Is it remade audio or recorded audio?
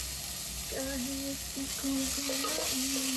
recorded